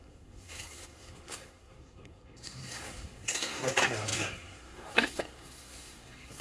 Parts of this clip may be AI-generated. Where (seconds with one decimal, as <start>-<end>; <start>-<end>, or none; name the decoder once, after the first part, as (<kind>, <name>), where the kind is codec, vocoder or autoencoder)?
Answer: 0.0-6.4 (codec, SNAC)